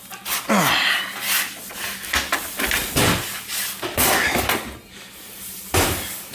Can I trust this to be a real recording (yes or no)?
yes